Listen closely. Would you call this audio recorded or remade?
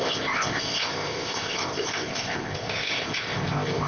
remade